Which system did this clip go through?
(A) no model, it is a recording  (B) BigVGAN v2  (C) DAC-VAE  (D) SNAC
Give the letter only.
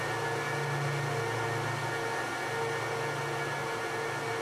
A